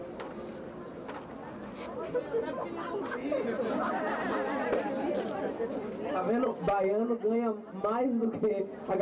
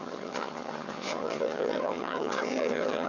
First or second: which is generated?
second